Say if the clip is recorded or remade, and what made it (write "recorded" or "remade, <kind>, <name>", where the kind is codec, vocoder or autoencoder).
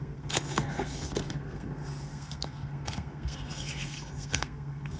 remade, codec, SNAC